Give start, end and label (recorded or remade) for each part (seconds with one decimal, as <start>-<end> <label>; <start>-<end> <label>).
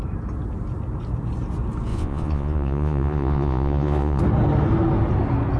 0.0-1.9 recorded; 1.9-4.2 remade; 4.2-5.6 recorded